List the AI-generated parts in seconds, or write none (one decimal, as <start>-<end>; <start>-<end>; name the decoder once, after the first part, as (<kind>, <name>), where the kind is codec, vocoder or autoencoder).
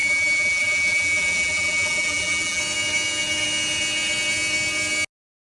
0.0-2.6 (vocoder, BigVGAN v2)